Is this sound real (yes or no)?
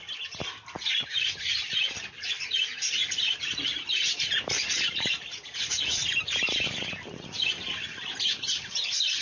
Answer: no